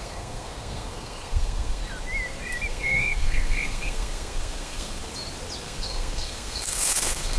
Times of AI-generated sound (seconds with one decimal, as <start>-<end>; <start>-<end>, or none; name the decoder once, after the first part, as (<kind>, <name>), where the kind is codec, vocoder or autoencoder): 0.0-1.8 (codec, SNAC); 2.7-5.0; 5.6-7.4